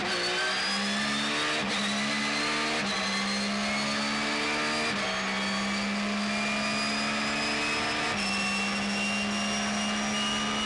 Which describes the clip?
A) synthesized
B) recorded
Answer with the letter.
B